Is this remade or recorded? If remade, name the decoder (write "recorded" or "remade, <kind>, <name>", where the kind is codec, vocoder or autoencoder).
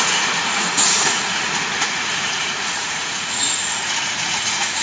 remade, vocoder, Vocos